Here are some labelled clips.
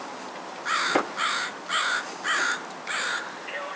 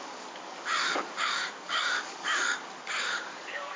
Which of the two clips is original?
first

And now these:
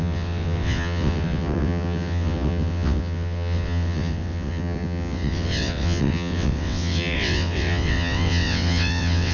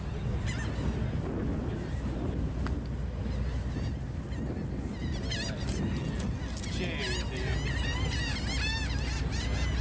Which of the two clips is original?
second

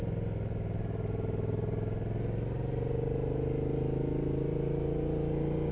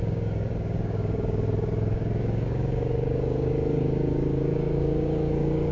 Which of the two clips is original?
first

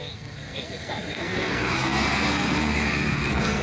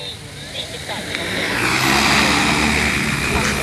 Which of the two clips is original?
second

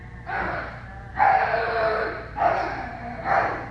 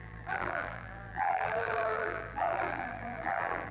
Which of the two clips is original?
first